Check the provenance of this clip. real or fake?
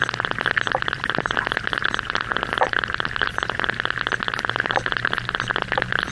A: real